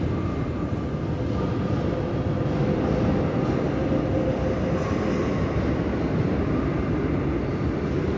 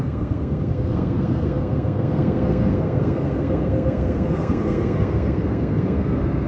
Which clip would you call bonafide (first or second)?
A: first